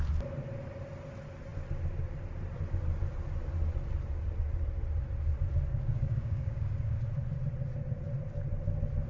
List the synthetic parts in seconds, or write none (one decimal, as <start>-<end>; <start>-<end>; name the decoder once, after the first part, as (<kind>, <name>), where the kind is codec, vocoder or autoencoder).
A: 5.7-7.0 (codec, DAC)